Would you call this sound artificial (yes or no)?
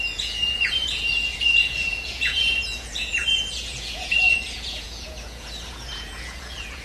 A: yes